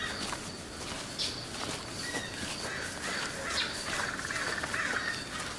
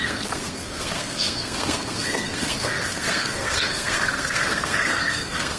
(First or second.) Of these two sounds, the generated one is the second